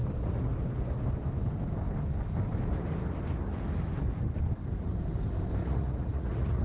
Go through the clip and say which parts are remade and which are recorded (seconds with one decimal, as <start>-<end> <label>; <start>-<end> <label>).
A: 0.0-5.6 recorded; 5.6-6.6 remade